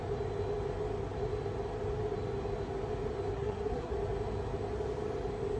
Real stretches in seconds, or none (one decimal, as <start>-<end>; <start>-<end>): 0.0-3.3; 3.9-5.6

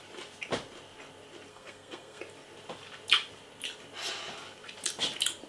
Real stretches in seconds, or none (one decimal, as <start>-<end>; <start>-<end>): 0.0-1.5; 2.2-5.5